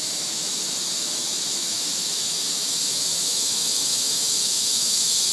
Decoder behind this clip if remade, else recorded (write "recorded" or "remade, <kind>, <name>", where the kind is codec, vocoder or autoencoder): remade, autoencoder, DAC-VAE